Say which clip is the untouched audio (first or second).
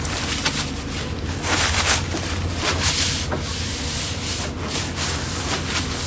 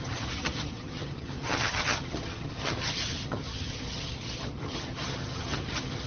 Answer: first